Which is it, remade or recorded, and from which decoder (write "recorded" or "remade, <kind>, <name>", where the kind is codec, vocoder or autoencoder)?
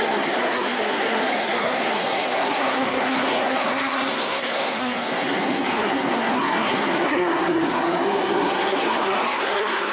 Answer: remade, codec, SNAC